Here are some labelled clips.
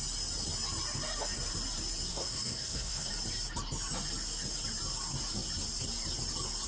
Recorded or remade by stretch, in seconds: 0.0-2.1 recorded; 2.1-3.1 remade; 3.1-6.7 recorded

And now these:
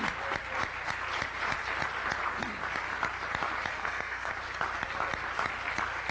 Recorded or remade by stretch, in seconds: 0.0-3.8 recorded; 3.8-4.3 remade; 4.3-6.1 recorded

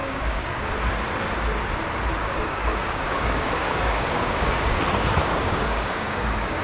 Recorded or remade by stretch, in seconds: 0.0-0.7 remade; 0.7-2.2 recorded; 2.2-4.8 remade; 4.8-5.2 recorded; 5.2-6.6 remade

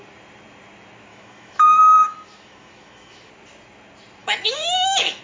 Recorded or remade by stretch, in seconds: 0.0-1.1 recorded; 1.1-3.3 remade; 3.3-4.2 recorded; 4.2-5.2 remade